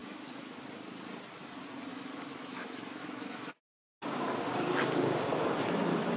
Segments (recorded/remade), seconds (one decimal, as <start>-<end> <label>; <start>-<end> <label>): 0.0-0.6 remade; 0.6-1.9 recorded; 1.9-3.8 remade; 3.8-5.3 recorded; 5.3-6.2 remade